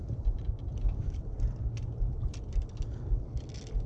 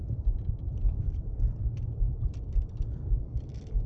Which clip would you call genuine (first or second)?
first